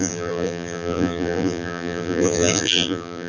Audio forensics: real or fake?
fake